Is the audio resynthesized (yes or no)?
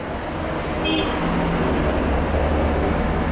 no